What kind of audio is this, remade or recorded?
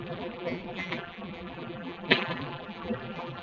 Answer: remade